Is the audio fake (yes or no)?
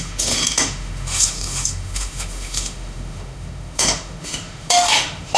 yes